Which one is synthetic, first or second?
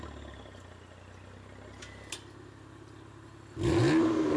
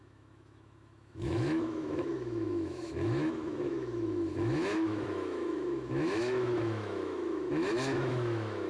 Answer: second